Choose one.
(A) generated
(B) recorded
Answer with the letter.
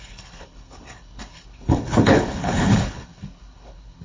A